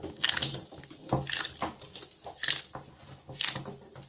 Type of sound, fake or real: real